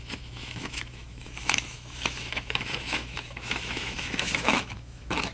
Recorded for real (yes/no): no